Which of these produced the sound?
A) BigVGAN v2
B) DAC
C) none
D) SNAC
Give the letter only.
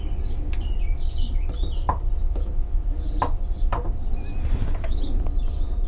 C